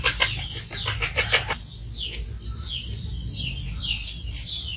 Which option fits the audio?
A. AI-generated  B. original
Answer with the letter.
B